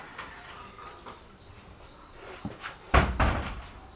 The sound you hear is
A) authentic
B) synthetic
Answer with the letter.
A